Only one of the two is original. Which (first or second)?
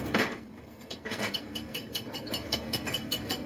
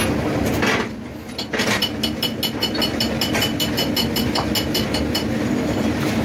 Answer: second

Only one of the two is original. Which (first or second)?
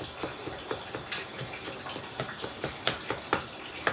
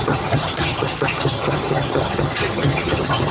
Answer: first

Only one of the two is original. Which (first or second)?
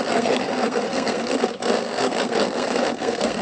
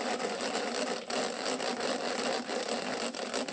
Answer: second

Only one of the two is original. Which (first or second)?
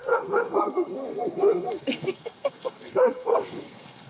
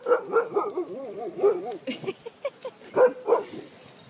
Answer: second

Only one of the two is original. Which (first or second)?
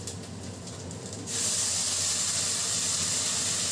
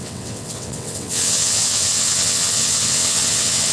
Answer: first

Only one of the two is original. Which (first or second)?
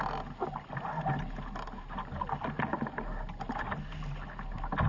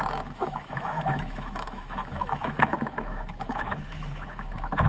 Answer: first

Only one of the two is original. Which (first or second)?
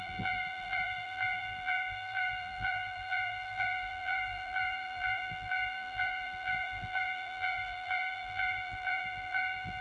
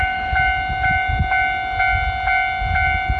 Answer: second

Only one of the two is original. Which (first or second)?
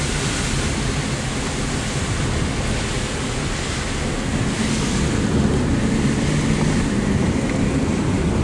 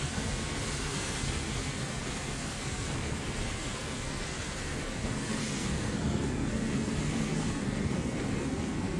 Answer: first